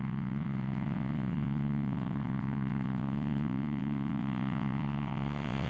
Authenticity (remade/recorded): remade